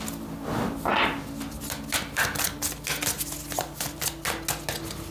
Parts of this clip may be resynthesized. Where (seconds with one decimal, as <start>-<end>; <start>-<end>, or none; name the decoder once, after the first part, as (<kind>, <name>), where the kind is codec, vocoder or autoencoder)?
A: none